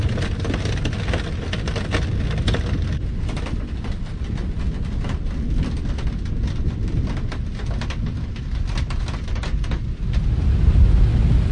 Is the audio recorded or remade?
recorded